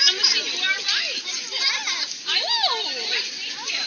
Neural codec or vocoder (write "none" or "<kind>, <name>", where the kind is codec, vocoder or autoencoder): none